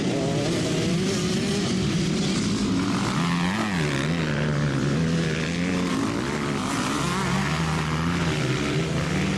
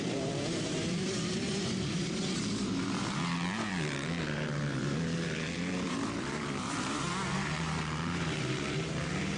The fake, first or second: second